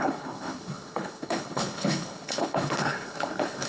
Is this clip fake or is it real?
fake